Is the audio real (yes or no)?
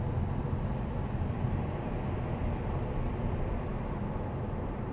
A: yes